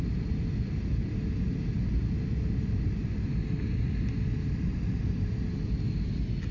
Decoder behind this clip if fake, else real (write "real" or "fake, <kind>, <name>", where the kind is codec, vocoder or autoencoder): real